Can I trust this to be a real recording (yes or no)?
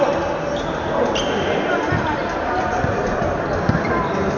yes